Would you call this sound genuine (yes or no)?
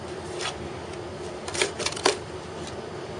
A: no